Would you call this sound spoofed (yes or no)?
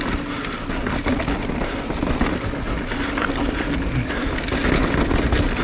no